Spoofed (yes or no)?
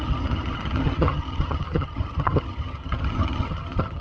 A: yes